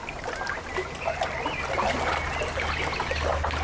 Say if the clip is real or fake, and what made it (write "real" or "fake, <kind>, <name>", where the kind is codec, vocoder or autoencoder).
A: real